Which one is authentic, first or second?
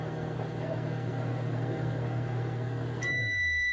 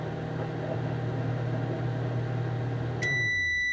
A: second